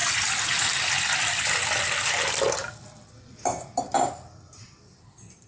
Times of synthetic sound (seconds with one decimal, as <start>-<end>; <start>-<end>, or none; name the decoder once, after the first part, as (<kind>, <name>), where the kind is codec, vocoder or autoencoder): 0.0-3.9 (vocoder, BigVGAN v2); 4.5-5.5